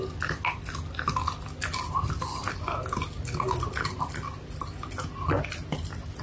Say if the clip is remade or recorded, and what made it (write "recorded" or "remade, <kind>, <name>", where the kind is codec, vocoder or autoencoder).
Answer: recorded